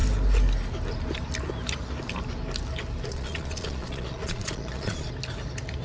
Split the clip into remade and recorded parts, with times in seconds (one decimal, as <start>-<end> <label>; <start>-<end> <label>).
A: 0.0-3.1 recorded; 3.1-5.1 remade; 5.1-5.8 recorded

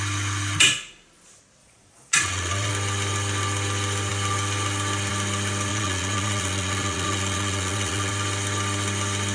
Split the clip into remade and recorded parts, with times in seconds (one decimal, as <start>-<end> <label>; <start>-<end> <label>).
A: 0.0-1.6 recorded; 1.6-2.7 remade; 2.7-5.7 recorded; 5.7-8.1 remade; 8.1-9.3 recorded